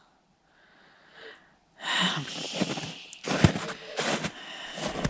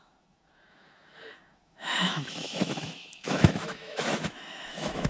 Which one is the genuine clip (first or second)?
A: first